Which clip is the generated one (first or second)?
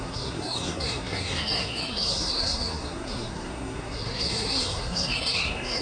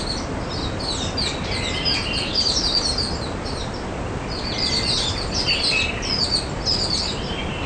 first